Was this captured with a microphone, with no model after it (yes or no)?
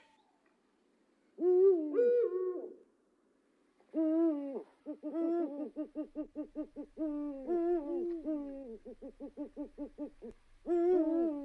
yes